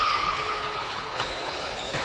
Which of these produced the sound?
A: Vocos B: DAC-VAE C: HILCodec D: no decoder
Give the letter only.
C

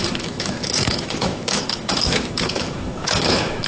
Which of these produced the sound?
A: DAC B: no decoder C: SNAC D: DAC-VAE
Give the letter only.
D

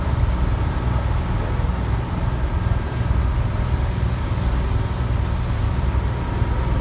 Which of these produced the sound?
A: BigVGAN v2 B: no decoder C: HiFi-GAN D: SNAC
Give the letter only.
B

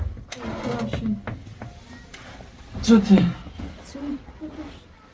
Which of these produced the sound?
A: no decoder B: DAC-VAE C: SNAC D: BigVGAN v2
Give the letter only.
A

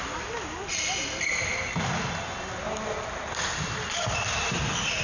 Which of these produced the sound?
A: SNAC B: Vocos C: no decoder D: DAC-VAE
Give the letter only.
C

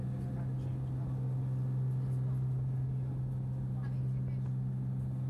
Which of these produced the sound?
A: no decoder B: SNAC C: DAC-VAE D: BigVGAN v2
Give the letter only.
A